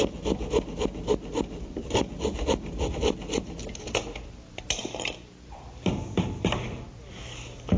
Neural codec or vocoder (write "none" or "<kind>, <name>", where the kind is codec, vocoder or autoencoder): none